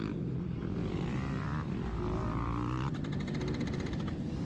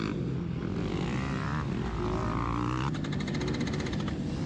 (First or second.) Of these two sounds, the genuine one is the second